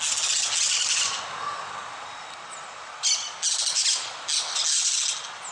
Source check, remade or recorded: recorded